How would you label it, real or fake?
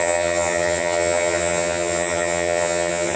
fake